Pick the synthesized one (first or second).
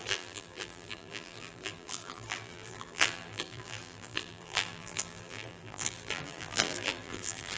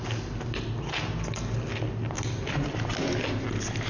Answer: first